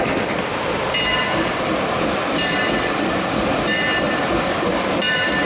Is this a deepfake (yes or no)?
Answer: yes